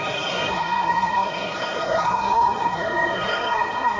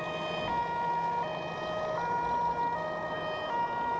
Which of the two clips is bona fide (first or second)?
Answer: second